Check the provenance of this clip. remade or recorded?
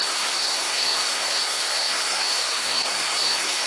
remade